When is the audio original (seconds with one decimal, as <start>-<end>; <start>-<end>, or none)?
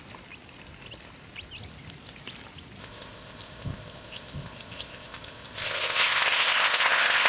0.0-2.8